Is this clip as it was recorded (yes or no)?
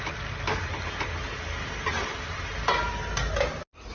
yes